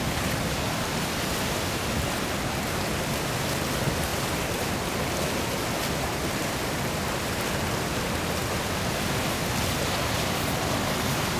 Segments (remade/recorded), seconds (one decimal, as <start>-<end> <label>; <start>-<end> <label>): 0.0-11.4 recorded